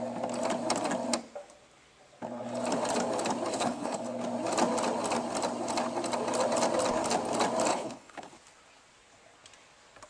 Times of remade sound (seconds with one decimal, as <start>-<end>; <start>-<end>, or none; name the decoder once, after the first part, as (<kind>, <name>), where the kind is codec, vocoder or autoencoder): 3.5-4.0 (codec, HILCodec); 7.7-8.3